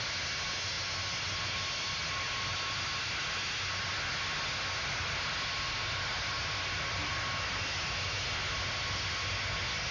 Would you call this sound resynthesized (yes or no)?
no